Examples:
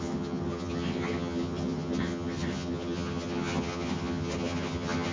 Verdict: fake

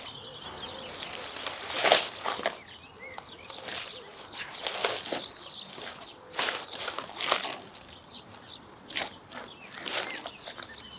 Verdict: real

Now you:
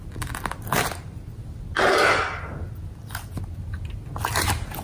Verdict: real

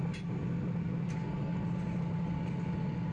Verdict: real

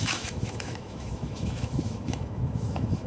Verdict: fake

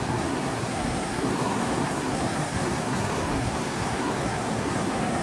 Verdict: fake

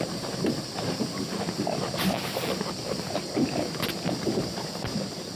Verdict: real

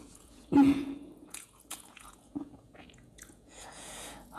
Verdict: fake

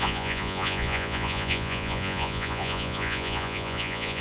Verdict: fake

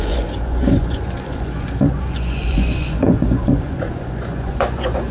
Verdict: fake